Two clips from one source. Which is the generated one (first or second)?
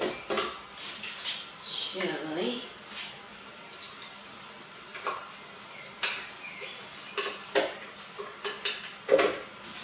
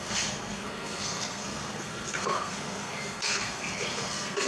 second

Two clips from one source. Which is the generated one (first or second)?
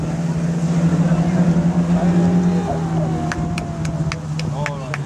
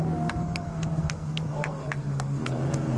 second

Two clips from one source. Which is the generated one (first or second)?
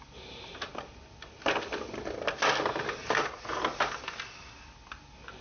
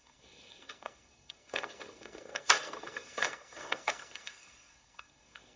second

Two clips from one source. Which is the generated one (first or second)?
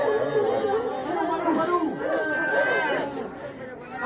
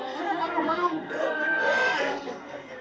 second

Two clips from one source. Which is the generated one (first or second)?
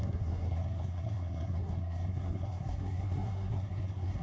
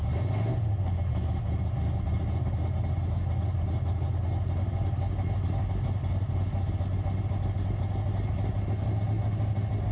first